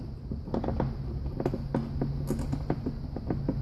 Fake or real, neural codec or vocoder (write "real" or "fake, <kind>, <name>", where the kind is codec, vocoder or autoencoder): real